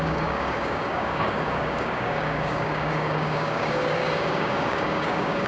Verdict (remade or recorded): remade